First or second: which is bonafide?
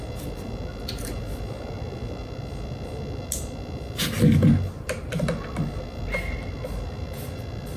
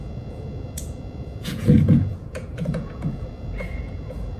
first